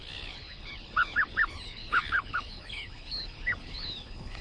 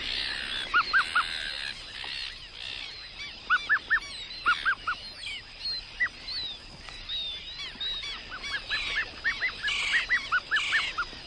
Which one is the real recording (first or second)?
second